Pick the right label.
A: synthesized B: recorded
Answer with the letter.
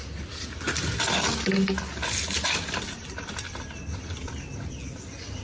B